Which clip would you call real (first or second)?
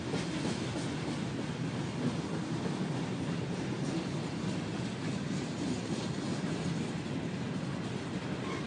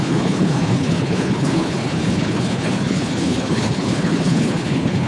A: first